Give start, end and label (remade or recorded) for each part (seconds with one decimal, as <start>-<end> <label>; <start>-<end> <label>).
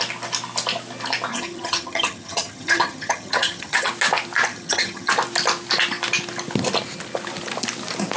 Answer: 0.0-1.3 recorded; 1.3-3.9 remade; 3.9-4.5 recorded; 4.5-5.1 remade; 5.1-8.2 recorded